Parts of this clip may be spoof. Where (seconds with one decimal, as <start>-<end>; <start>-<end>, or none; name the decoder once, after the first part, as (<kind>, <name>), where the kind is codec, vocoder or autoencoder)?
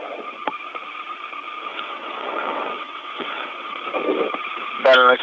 1.7-3.8 (vocoder, WaveNeXt)